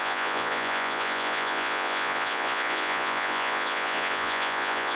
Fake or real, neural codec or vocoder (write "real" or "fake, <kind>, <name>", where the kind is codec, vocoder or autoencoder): fake, vocoder, Vocos